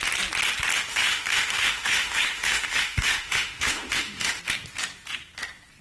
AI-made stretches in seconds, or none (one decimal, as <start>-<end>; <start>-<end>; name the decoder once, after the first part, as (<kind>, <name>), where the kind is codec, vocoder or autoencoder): 0.9-4.4 (autoencoder, DAC-VAE)